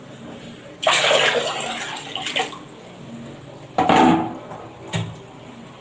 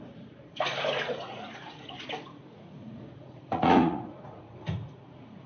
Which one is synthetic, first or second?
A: second